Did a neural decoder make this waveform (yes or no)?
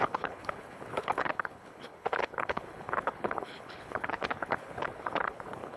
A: yes